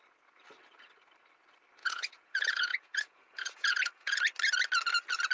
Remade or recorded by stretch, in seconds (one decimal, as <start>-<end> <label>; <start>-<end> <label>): 0.0-1.8 recorded; 1.8-4.2 remade; 4.2-5.3 recorded